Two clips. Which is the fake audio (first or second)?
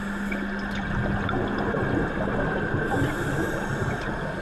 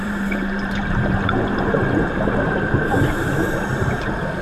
second